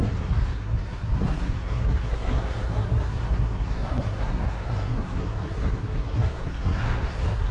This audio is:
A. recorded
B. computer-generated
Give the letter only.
B